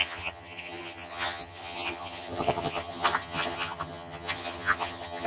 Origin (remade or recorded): remade